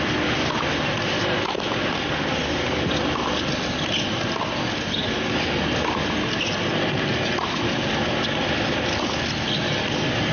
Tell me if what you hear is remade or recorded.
recorded